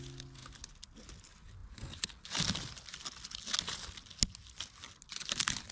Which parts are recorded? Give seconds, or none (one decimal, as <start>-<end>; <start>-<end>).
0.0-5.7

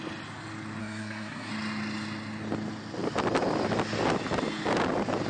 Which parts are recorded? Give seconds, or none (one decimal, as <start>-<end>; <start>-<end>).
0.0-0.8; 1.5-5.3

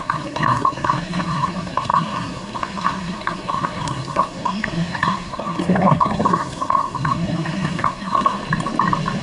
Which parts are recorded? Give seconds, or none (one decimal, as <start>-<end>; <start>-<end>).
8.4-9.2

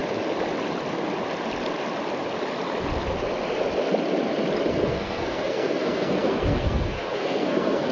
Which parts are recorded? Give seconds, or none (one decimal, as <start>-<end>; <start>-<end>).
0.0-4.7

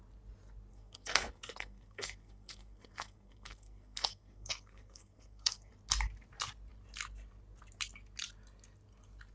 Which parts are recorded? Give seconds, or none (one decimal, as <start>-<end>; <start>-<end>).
0.0-0.7; 5.7-9.3

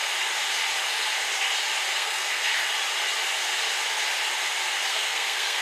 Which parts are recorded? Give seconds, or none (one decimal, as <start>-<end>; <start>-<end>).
0.0-1.9; 2.5-4.9

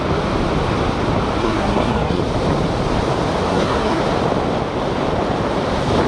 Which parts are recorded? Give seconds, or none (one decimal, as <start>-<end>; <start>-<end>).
0.0-1.4; 2.2-3.5; 4.0-6.1